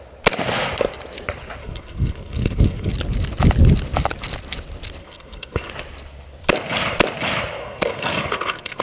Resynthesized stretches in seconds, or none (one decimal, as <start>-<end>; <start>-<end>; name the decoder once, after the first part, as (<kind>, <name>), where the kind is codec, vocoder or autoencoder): 1.6-2.9 (codec, SNAC); 5.0-5.7; 7.6-8.8